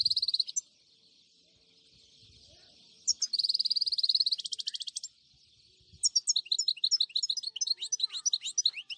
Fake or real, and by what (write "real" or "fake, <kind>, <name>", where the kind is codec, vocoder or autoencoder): real